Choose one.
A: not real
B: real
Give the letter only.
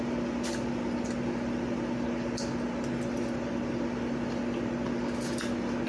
B